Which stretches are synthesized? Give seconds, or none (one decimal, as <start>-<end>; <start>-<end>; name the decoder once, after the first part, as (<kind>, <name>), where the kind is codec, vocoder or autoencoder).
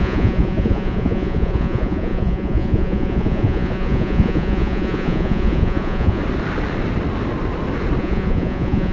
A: 0.0-6.2 (vocoder, Vocos); 8.0-8.9